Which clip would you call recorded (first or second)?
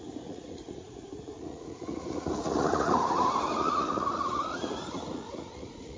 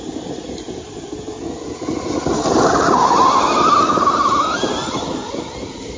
second